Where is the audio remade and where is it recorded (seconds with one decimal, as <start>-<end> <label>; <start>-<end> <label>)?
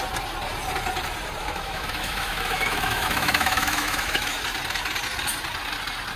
0.0-1.4 recorded; 1.4-4.4 remade; 4.4-6.2 recorded